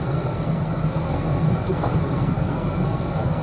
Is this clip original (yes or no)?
no